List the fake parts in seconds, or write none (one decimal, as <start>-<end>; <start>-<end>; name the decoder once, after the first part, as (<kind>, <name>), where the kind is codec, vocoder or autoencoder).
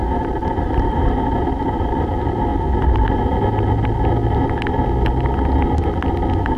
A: 0.0-2.5 (vocoder, BigVGAN v2)